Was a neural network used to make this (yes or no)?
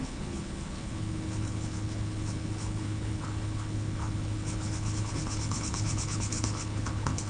yes